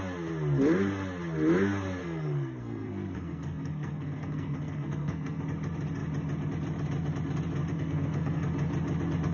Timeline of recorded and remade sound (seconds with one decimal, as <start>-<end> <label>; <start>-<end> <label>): 0.0-2.0 recorded; 2.0-5.4 remade; 5.4-7.7 recorded; 7.7-8.5 remade; 8.5-9.3 recorded